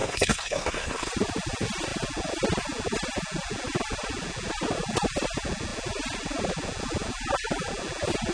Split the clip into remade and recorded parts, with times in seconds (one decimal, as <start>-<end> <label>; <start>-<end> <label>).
0.0-1.1 remade; 1.1-8.3 recorded